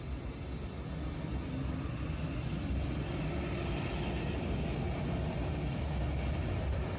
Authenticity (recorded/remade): recorded